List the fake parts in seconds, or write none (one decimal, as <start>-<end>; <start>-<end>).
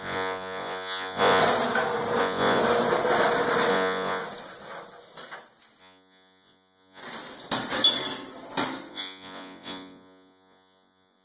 0.0-1.4; 2.2-2.6; 3.7-4.2; 5.8-7.0; 8.9-11.2